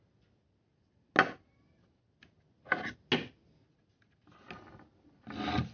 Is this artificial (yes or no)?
no